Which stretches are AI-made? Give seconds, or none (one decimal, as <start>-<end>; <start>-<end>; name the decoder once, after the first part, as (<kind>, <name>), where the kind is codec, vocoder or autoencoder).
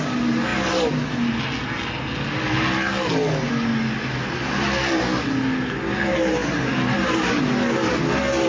none